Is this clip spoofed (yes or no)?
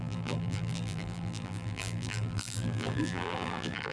yes